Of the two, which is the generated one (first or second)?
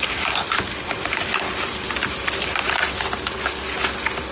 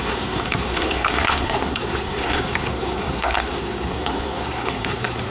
second